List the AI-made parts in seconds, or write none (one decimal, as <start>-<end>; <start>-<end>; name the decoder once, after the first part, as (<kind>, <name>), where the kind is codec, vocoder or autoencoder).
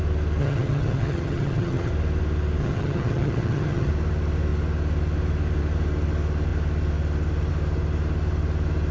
0.4-1.9 (vocoder, HiFi-GAN); 2.6-3.9